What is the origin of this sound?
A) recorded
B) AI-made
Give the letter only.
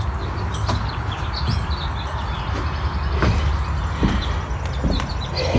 A